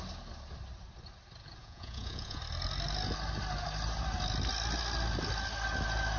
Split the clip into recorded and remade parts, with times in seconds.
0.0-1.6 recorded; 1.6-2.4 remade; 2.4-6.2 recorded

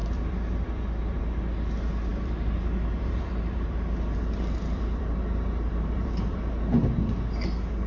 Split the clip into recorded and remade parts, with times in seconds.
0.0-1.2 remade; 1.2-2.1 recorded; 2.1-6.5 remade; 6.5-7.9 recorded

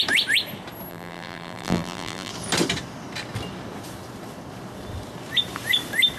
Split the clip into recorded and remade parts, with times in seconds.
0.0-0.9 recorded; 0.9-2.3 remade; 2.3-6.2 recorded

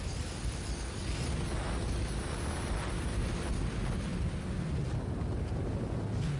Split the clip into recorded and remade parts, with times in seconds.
0.0-6.4 recorded